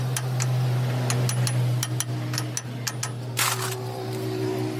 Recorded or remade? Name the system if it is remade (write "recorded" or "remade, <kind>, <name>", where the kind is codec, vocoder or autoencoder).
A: recorded